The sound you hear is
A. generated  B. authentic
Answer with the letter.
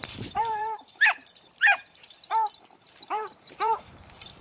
A